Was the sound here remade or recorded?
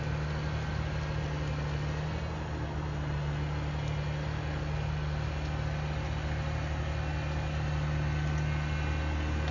recorded